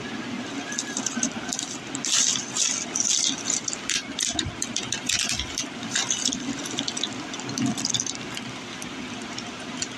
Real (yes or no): yes